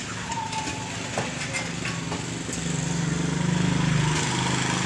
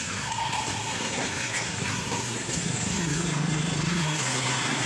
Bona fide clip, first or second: first